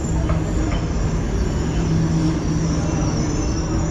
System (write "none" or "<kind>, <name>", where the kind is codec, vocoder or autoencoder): none